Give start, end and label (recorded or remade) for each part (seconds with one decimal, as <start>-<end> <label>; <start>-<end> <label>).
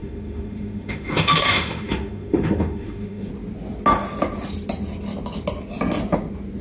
0.0-3.3 remade; 3.3-6.6 recorded